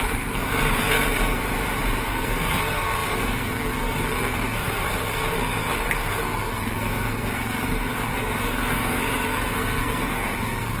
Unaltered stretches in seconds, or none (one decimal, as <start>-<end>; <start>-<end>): 1.4-2.0

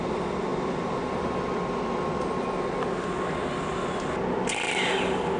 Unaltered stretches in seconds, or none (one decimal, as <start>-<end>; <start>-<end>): 0.0-5.4

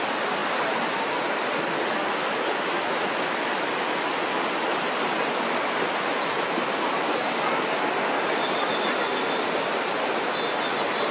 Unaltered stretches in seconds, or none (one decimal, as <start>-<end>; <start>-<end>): 0.0-11.1